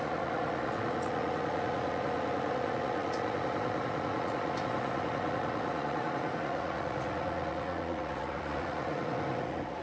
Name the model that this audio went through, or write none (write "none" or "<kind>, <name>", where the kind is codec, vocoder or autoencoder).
vocoder, Vocos